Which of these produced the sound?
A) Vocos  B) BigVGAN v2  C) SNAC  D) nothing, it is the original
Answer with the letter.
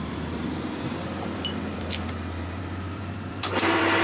B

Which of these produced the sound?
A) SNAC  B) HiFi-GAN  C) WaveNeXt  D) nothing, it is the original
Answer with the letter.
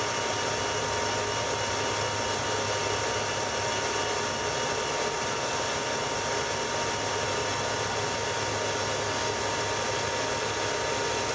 D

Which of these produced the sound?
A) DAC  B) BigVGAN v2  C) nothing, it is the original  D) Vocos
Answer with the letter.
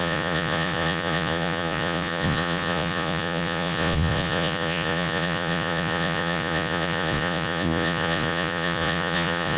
D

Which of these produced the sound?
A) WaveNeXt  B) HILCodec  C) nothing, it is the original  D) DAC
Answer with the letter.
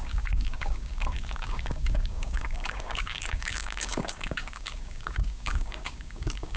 D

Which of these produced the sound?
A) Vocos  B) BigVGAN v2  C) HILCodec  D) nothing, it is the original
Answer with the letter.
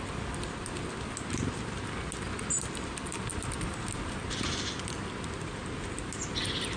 D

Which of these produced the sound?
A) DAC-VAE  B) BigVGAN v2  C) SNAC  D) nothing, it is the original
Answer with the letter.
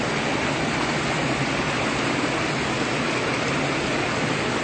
D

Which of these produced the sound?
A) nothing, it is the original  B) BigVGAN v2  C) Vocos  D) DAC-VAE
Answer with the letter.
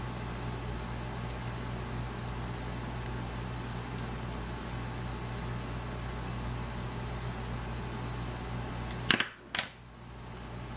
A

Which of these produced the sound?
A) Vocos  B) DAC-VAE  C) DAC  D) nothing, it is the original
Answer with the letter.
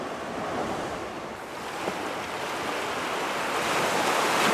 D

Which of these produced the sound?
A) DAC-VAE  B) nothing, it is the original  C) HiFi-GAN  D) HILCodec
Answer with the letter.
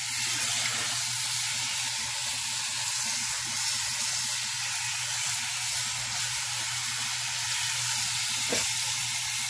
B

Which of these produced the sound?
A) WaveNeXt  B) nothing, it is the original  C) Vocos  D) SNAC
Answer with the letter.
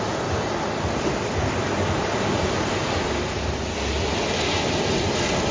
B